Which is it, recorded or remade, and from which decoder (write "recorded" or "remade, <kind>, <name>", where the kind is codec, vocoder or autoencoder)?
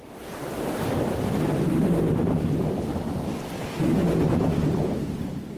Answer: recorded